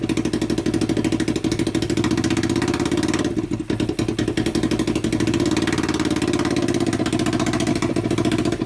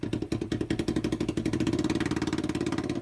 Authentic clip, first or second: first